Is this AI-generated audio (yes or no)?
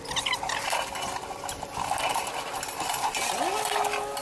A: no